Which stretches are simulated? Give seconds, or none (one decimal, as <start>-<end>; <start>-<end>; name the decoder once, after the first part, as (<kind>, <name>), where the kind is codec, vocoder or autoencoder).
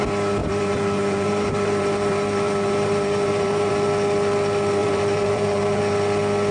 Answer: 0.4-3.7 (vocoder, BigVGAN v2); 4.8-5.8